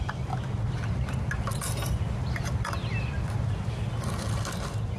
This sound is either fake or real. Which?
real